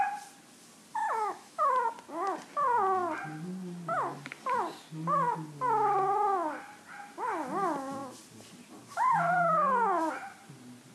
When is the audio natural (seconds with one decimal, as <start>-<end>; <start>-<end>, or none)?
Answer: 0.0-1.0; 1.7-10.9